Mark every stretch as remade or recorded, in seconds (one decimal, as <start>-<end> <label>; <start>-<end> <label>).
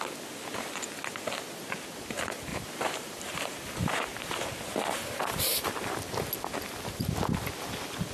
0.0-2.5 recorded; 2.5-5.7 remade; 5.7-8.1 recorded